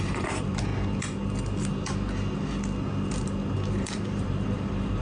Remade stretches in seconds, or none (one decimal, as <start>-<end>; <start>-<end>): 0.0-0.7; 3.7-5.0